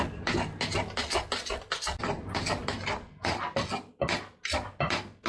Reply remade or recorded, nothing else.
recorded